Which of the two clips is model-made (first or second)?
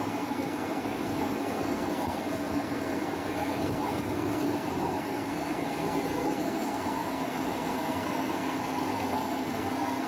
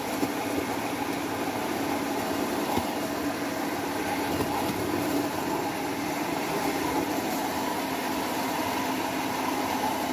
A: first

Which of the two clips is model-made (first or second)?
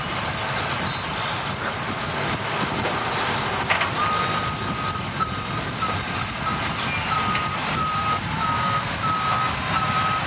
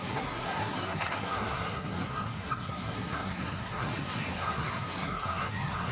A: second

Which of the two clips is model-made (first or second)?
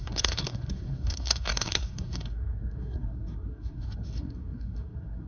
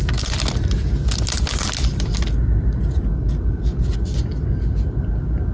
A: first